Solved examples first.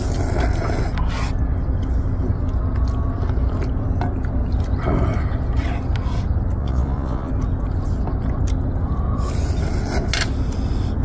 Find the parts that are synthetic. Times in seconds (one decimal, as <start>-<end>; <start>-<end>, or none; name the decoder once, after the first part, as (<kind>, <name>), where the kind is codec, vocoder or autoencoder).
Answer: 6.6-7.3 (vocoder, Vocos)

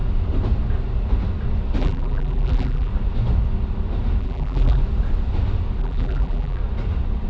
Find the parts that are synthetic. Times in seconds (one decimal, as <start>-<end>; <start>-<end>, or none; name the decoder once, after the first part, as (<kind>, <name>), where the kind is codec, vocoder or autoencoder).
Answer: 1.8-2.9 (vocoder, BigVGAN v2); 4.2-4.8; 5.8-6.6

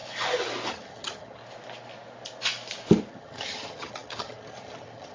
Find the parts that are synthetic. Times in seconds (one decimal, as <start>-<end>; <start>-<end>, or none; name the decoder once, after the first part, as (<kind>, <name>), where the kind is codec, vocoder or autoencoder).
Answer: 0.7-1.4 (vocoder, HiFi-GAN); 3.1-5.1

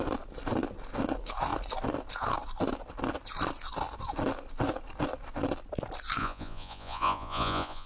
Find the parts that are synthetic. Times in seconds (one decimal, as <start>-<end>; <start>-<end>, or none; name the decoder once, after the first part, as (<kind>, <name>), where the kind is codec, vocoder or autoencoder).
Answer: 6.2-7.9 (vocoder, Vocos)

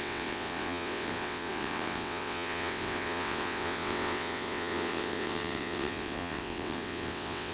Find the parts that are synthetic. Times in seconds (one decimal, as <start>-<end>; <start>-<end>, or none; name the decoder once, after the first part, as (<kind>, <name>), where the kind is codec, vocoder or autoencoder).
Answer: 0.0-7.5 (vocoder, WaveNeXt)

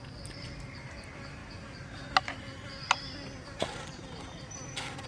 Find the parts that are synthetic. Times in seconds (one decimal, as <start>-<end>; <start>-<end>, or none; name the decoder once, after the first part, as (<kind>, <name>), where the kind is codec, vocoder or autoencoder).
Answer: none